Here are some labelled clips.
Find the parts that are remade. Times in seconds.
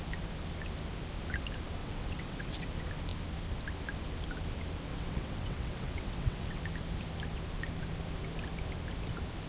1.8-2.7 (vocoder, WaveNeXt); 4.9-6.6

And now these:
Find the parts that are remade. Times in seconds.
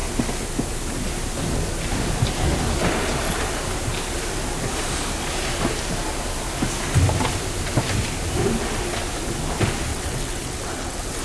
9.9-11.2 (vocoder, WaveNeXt)